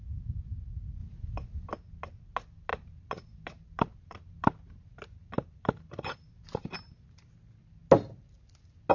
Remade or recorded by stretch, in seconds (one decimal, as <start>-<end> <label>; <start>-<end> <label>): 0.0-1.0 recorded; 1.0-1.7 remade; 1.7-2.7 recorded; 2.7-7.3 remade; 7.3-8.9 recorded